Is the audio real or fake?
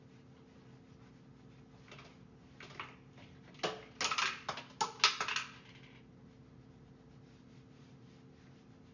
real